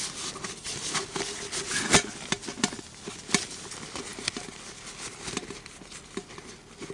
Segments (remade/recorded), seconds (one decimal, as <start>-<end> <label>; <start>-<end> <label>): 0.0-6.9 recorded